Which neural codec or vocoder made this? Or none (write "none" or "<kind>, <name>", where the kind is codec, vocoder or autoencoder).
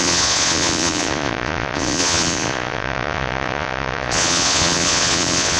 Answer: vocoder, Vocos